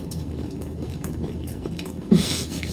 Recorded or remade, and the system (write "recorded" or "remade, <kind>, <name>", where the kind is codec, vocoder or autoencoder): remade, codec, SNAC